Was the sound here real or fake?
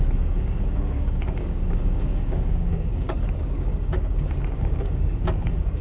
fake